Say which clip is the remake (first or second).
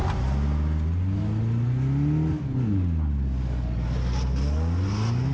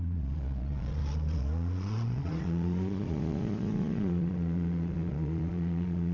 second